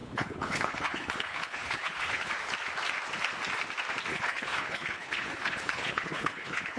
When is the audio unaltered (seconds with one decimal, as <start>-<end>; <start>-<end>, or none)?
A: 2.3-4.1